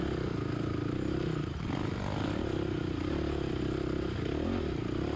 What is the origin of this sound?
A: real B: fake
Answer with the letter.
A